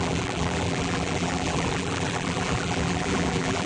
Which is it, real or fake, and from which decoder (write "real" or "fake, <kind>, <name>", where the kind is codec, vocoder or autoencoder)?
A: fake, vocoder, BigVGAN v2